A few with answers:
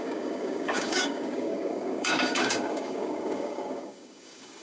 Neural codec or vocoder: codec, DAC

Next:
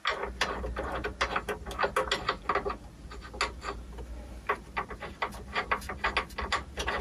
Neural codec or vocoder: none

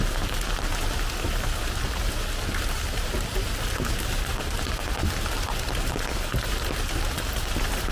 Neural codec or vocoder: none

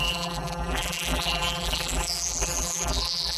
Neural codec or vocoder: vocoder, BigVGAN v2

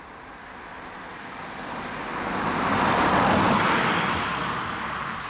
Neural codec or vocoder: none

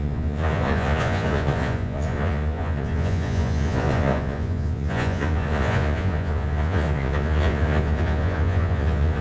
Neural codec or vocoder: vocoder, Vocos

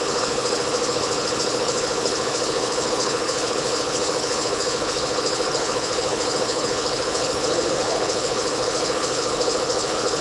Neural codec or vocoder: codec, HILCodec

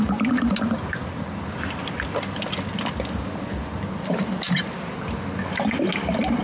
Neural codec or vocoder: none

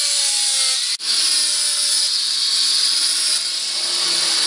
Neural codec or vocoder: none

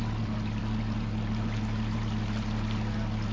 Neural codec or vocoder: none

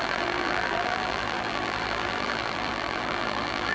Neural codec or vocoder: vocoder, BigVGAN v2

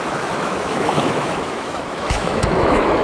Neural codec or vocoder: autoencoder, DAC-VAE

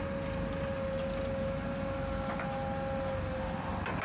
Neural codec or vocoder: none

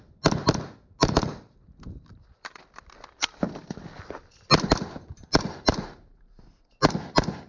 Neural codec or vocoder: none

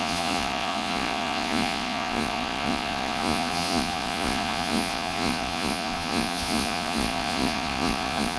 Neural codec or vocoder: vocoder, Vocos